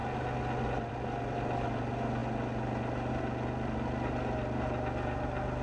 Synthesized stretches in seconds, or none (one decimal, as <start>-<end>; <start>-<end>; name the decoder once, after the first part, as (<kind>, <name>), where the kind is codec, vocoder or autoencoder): none